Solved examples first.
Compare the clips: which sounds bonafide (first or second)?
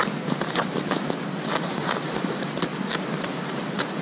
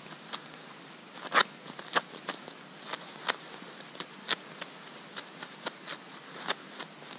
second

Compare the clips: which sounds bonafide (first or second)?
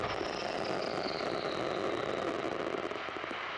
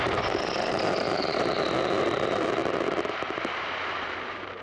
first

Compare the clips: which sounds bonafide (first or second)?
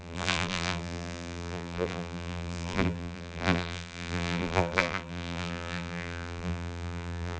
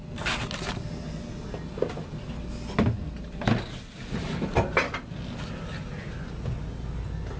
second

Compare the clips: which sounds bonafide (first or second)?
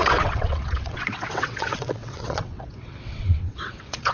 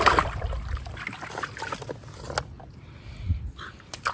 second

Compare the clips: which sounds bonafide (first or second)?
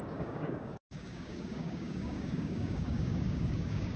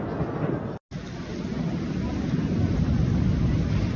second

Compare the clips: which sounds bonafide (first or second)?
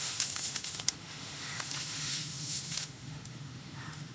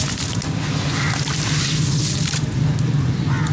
second